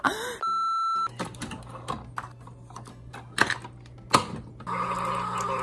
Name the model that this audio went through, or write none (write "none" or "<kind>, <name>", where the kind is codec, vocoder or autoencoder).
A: none